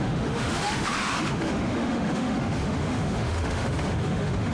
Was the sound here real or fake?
fake